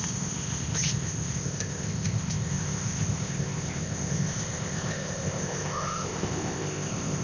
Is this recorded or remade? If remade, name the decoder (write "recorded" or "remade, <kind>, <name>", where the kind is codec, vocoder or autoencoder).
remade, codec, ZipCodec